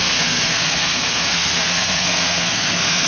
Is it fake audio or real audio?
fake